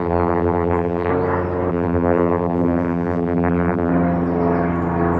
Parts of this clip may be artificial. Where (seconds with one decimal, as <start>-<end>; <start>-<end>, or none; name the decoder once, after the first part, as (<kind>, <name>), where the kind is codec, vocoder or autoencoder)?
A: 0.0-1.1 (vocoder, BigVGAN v2); 1.7-3.9